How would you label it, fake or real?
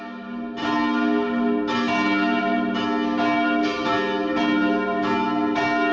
real